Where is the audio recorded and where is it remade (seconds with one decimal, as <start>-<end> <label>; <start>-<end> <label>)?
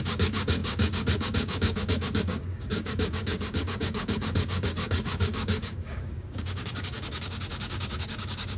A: 0.0-8.6 remade